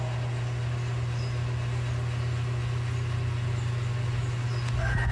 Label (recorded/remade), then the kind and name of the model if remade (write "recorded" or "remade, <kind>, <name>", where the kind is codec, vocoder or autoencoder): recorded